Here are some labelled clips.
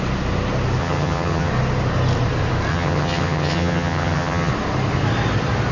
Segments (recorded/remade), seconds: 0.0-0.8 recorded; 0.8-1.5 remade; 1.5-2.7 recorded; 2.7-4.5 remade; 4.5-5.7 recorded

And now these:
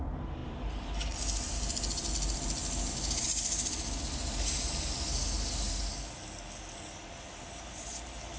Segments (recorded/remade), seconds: 0.0-8.4 recorded